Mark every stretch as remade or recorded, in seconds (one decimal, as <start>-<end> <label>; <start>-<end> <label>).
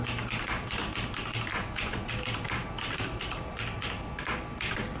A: 0.0-1.5 recorded; 1.5-2.1 remade; 2.1-5.0 recorded